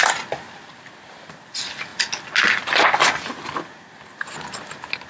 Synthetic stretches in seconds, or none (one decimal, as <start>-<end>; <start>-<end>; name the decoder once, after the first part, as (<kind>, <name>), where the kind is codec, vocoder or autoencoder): none